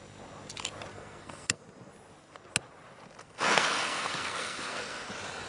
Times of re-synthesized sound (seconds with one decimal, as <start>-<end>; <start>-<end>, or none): 0.9-1.6; 3.2-5.1